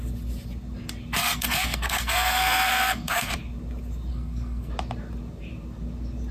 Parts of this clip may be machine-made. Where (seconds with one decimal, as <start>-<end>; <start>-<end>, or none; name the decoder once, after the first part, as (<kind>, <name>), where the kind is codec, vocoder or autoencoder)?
1.2-3.3 (codec, SNAC); 4.1-4.7